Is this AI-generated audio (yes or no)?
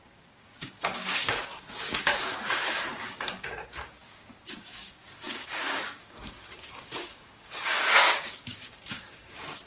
yes